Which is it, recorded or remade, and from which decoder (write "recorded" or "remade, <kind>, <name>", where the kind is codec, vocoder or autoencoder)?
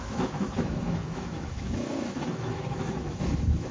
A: remade, autoencoder, DAC-VAE